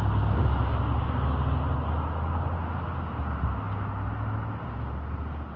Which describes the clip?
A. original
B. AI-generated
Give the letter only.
A